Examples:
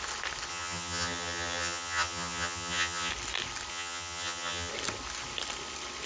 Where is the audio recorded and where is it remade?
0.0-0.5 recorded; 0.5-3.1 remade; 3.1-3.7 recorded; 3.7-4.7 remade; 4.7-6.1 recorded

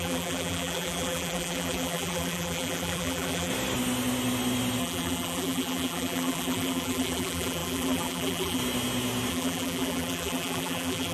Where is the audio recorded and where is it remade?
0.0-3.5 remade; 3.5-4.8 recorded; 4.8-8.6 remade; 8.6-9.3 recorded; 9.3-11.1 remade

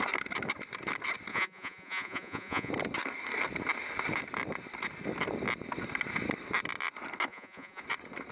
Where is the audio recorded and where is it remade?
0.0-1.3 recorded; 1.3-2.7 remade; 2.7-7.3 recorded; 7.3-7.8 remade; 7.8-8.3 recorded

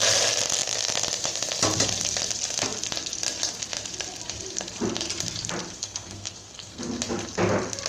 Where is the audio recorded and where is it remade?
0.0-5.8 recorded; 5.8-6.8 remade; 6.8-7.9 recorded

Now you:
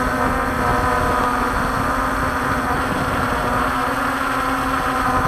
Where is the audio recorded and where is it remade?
0.0-5.3 recorded

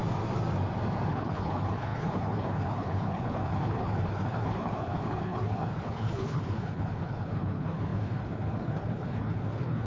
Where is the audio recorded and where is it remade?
0.0-1.1 recorded; 1.1-9.9 remade

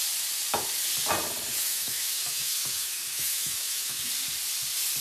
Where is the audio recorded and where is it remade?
0.0-1.6 recorded; 1.6-4.1 remade; 4.1-5.0 recorded